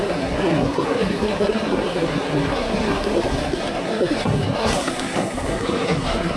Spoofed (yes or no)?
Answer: yes